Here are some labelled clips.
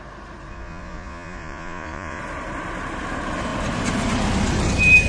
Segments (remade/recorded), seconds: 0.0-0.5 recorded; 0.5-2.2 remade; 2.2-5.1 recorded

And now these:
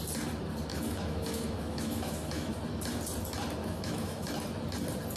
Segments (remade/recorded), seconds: 0.0-0.7 recorded; 0.7-2.5 remade; 2.5-3.6 recorded; 3.6-4.3 remade; 4.3-5.2 recorded

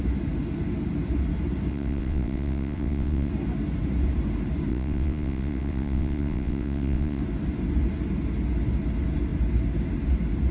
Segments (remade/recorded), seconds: 0.0-1.7 recorded; 1.7-3.3 remade; 3.3-4.7 recorded; 4.7-7.2 remade; 7.2-10.5 recorded

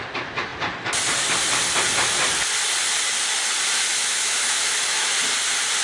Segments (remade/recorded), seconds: 0.0-3.9 recorded; 3.9-5.2 remade; 5.2-5.8 recorded

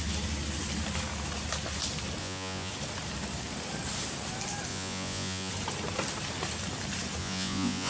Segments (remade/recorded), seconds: 0.0-2.2 recorded; 2.2-2.7 remade; 2.7-4.7 recorded; 4.7-5.5 remade; 5.5-7.2 recorded; 7.2-7.9 remade

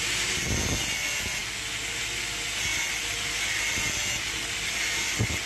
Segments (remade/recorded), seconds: 0.0-5.5 recorded

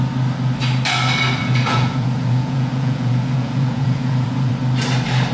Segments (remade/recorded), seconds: 0.0-1.4 recorded; 1.4-4.5 remade; 4.5-5.3 recorded

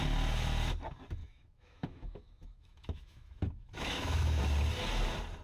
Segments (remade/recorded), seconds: 0.0-1.2 recorded; 1.2-4.4 remade; 4.4-5.4 recorded